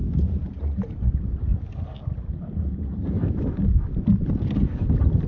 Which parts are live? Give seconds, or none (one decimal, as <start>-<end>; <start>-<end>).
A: 0.0-5.3